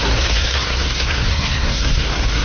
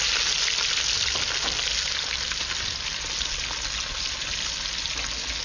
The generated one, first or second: first